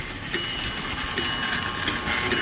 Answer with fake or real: real